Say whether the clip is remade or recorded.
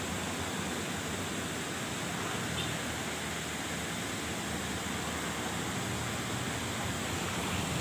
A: recorded